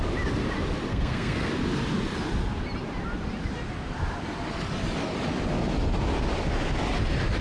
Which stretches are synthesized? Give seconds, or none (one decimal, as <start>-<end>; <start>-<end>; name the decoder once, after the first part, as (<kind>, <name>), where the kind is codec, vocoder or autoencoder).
0.9-1.5 (codec, SNAC)